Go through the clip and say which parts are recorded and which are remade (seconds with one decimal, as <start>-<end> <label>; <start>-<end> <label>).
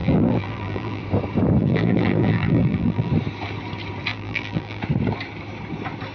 0.0-1.0 remade; 1.0-1.6 recorded; 1.6-3.1 remade; 3.1-4.1 recorded; 4.1-4.8 remade; 4.8-6.1 recorded